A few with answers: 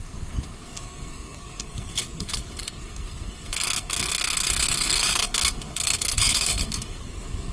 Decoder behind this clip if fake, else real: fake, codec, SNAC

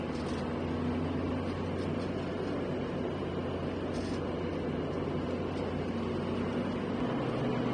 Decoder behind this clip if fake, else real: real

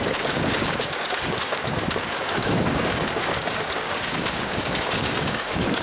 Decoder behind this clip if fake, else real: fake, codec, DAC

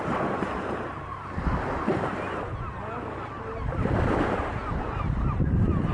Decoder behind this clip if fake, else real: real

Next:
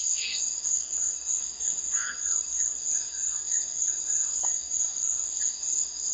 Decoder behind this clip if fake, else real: fake, codec, SNAC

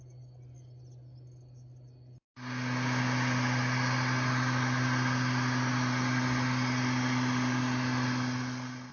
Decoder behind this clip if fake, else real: real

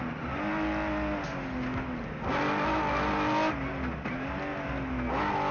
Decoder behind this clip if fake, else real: real